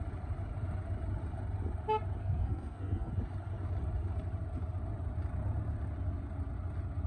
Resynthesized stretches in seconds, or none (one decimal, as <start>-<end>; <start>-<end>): 2.2-3.1